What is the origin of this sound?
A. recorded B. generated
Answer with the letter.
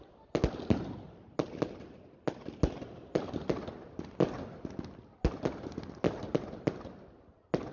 A